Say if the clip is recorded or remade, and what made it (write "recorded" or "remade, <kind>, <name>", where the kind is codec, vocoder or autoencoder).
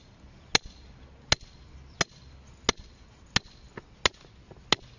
recorded